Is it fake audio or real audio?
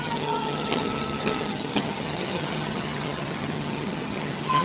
fake